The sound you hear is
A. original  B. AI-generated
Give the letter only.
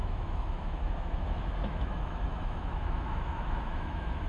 B